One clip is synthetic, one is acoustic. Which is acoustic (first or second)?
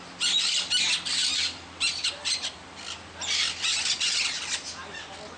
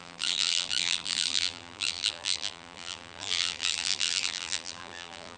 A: first